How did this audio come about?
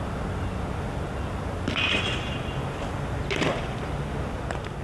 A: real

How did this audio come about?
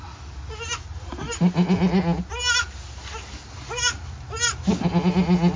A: real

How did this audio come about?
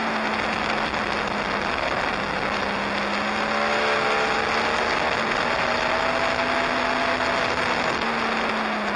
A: real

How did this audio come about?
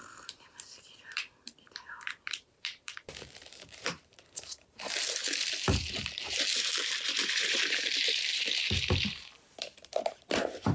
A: fake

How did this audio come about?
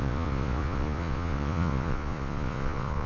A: fake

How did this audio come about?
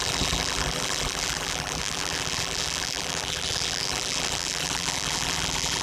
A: fake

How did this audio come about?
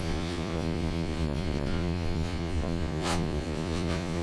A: fake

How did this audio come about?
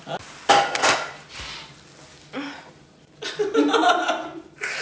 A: real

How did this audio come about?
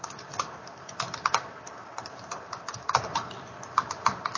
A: fake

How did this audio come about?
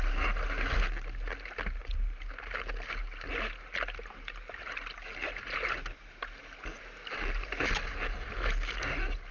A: real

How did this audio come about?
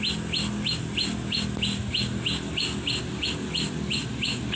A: real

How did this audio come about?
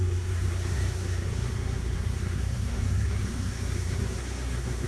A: fake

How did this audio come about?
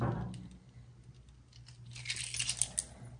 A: real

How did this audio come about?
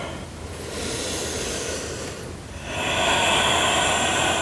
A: real